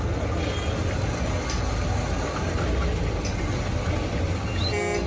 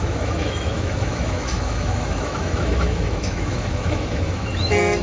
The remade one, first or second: second